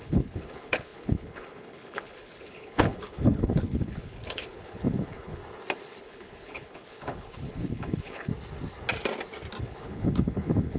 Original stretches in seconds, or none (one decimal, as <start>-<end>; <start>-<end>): 5.4-6.0; 8.3-9.6